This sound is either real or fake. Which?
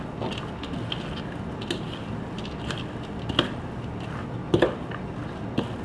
real